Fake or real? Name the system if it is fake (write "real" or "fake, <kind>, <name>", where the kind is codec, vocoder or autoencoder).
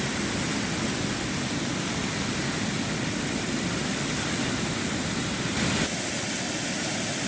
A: real